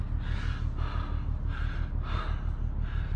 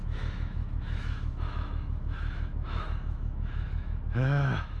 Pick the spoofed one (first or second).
second